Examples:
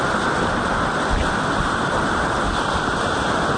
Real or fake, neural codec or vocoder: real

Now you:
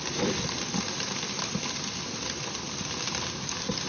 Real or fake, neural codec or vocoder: fake, vocoder, BigVGAN v2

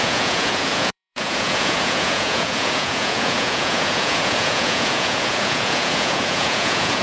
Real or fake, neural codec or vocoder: fake, vocoder, Vocos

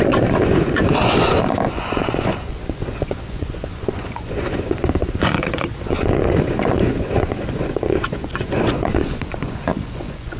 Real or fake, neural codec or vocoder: fake, vocoder, Vocos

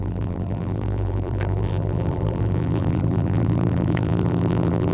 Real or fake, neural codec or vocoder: fake, vocoder, BigVGAN v2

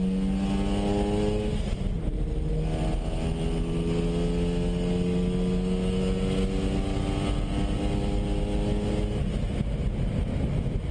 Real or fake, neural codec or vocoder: real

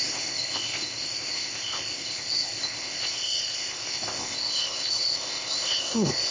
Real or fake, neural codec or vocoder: fake, codec, ZipCodec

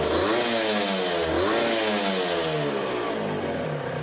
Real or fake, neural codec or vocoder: real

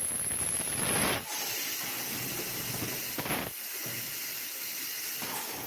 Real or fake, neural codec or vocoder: real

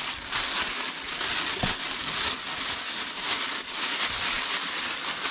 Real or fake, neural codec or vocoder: real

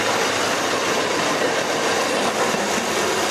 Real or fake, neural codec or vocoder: real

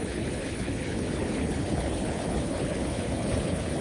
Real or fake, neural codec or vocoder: fake, codec, HILCodec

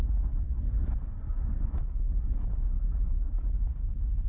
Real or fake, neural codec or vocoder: fake, vocoder, BigVGAN v2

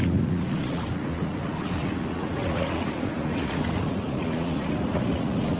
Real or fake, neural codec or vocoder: fake, vocoder, Vocos